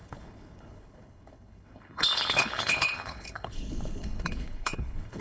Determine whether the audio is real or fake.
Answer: fake